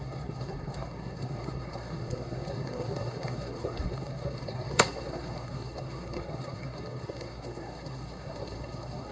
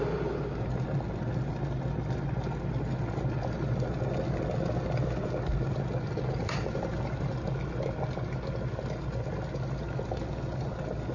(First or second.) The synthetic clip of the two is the first